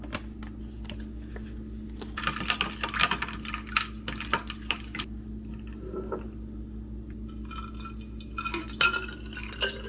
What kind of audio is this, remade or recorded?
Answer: recorded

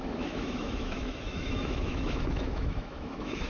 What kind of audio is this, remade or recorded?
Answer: remade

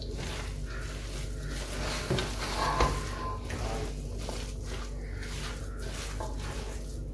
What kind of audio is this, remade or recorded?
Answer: recorded